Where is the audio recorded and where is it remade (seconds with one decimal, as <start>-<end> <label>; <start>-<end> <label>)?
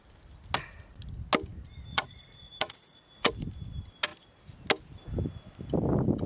0.0-1.9 recorded; 1.9-3.3 remade; 3.3-6.3 recorded